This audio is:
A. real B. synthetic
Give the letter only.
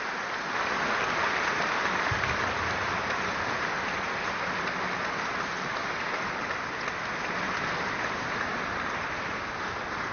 A